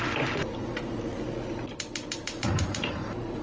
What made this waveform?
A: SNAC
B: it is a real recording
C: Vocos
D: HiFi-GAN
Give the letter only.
B